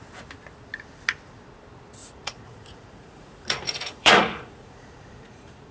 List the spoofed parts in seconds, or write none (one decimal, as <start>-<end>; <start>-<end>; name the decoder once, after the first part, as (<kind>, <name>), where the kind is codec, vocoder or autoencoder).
2.0-5.7 (vocoder, Vocos)

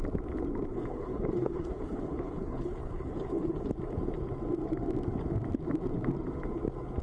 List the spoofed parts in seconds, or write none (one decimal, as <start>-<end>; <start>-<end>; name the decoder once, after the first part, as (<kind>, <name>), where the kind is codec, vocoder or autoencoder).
0.7-3.7 (codec, HILCodec)

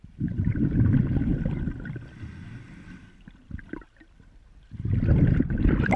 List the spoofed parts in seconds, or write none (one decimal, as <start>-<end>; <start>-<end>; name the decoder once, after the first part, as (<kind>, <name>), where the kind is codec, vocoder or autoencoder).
0.0-1.3 (vocoder, BigVGAN v2); 4.4-6.0

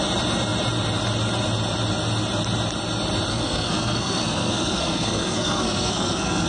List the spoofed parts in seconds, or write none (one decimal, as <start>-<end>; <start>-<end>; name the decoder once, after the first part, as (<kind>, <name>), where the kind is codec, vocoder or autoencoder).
3.3-6.5 (codec, SNAC)